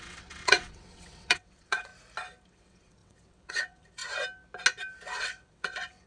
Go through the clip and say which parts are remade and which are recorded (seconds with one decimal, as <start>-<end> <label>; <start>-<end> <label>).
0.0-1.9 remade; 1.9-2.5 recorded; 2.5-4.0 remade; 4.0-5.2 recorded; 5.2-6.1 remade